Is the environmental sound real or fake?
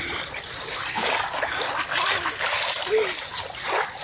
real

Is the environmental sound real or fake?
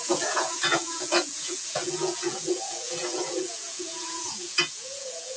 fake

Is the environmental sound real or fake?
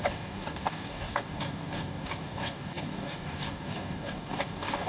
fake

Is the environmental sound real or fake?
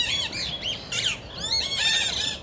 real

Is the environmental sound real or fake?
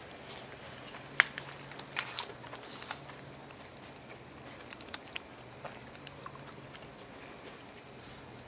real